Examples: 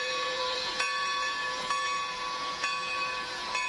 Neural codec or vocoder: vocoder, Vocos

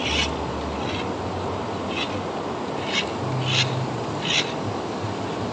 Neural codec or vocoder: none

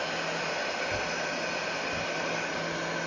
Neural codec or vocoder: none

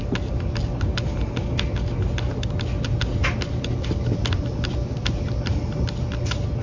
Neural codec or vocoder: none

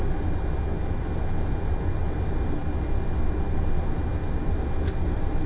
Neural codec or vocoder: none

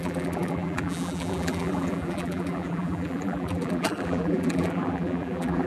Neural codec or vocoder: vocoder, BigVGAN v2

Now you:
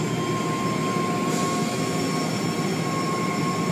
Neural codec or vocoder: none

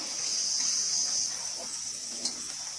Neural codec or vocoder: none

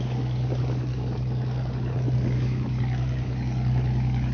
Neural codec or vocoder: codec, DAC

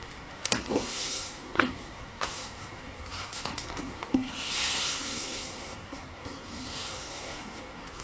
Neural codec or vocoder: codec, SNAC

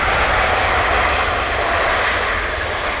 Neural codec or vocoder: none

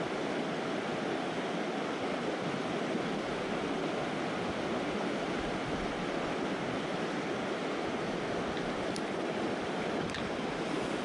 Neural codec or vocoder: none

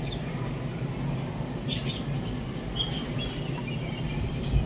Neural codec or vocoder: none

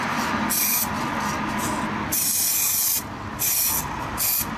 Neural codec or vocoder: none